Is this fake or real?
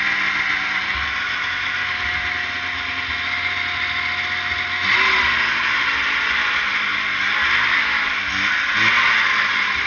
real